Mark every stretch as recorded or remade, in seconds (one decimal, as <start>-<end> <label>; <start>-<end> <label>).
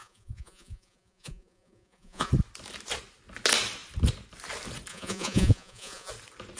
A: 0.0-2.3 remade; 2.3-4.9 recorded; 4.9-6.1 remade; 6.1-6.6 recorded